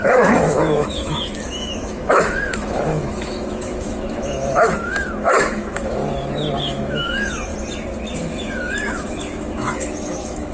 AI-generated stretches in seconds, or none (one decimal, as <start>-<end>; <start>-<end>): 0.0-6.0; 6.6-7.5; 8.2-10.5